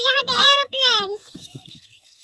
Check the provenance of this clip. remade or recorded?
remade